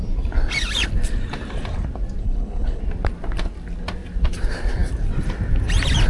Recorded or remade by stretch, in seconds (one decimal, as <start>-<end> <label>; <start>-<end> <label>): 0.0-2.2 recorded; 2.2-2.8 remade; 2.8-6.1 recorded